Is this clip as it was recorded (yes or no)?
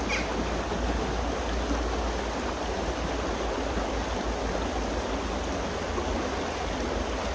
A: yes